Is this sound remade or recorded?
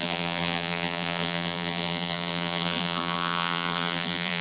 remade